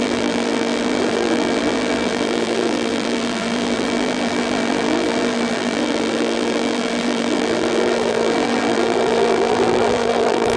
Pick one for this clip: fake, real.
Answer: fake